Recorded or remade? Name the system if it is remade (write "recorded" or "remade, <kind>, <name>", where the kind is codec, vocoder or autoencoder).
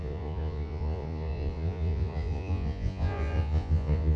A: remade, vocoder, Vocos